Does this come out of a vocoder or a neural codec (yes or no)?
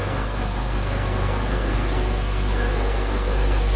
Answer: yes